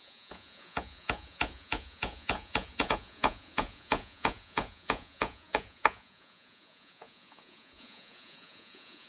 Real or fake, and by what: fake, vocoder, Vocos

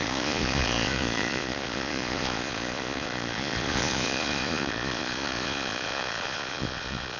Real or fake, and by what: fake, vocoder, Vocos